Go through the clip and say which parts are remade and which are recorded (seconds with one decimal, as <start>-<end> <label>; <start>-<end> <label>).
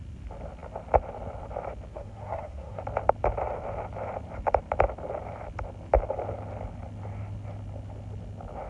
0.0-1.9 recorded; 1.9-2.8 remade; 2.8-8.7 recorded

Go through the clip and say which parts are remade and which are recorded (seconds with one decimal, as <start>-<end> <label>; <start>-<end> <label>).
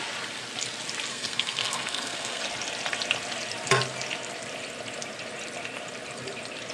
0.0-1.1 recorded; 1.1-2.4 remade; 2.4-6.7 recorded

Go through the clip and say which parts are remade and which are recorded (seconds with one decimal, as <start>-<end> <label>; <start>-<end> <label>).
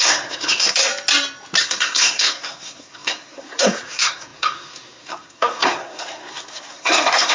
0.0-0.9 remade; 0.9-1.6 recorded; 1.6-7.3 remade